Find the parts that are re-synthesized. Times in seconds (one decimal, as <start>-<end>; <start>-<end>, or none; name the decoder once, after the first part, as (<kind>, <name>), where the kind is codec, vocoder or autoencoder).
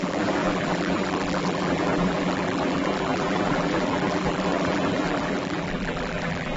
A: 0.0-6.6 (vocoder, BigVGAN v2)